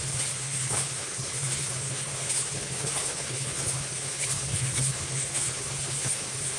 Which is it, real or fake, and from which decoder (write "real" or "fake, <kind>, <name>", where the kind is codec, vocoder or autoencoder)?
fake, codec, HILCodec